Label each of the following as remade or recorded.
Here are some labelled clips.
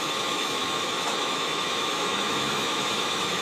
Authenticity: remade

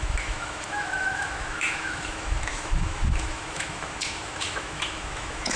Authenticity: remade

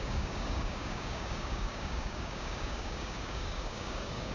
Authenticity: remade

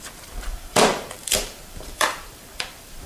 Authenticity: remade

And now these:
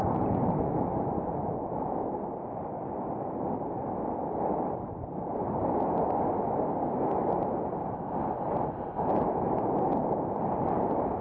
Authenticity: recorded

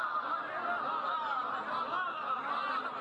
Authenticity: recorded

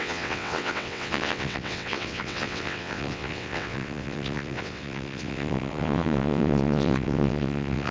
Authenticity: remade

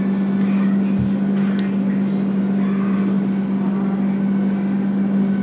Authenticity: recorded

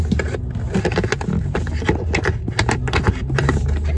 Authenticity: recorded